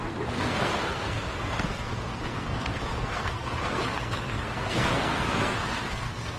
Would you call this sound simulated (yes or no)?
yes